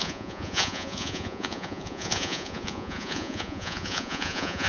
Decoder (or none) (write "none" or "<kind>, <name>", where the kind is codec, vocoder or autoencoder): vocoder, Vocos